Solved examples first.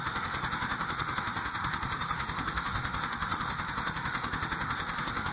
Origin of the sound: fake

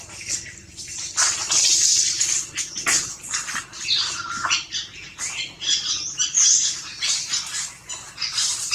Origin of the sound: real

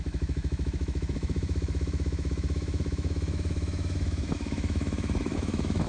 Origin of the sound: fake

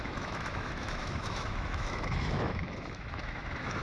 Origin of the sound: fake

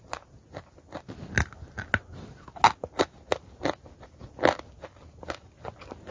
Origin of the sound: real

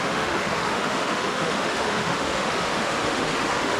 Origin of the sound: fake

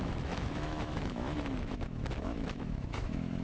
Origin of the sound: fake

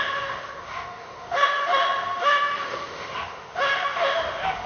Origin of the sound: fake